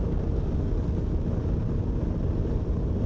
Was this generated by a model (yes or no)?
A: no